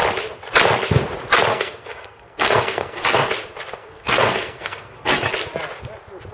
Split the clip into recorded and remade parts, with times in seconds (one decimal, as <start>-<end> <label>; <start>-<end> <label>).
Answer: 0.0-1.5 recorded; 1.5-3.3 remade; 3.3-3.8 recorded; 3.8-5.3 remade; 5.3-6.3 recorded